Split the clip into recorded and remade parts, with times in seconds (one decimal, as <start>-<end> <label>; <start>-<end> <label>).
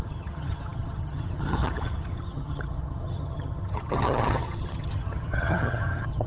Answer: 0.0-6.3 remade